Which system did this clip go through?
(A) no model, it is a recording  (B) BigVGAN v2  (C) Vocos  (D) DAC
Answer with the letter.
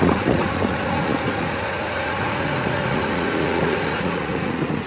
C